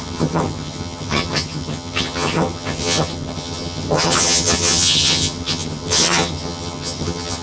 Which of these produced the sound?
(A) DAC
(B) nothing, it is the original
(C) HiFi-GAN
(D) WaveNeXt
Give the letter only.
C